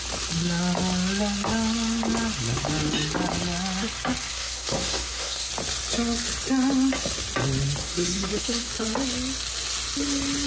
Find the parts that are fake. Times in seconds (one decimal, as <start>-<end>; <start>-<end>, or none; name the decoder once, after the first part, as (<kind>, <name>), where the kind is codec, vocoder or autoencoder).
4.3-5.5 (codec, SNAC); 7.8-8.7